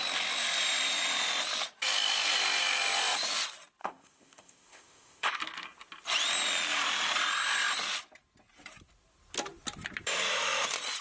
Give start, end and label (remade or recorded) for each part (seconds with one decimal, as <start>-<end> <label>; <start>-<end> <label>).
0.0-3.8 recorded; 3.8-5.4 remade; 5.4-11.0 recorded